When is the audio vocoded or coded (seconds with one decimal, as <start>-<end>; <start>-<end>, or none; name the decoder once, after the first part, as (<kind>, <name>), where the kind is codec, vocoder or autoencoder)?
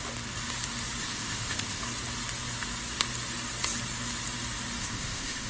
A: 1.0-1.8 (codec, ZipCodec); 4.8-5.5